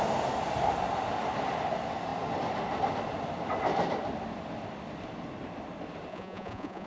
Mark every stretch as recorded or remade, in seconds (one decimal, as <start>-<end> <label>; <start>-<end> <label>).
0.0-6.1 recorded; 6.1-6.9 remade